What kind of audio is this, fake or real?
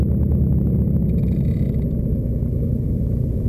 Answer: real